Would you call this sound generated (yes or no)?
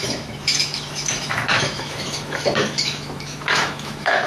yes